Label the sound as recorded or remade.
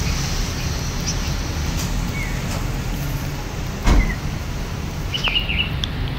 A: recorded